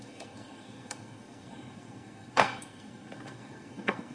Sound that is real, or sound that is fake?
fake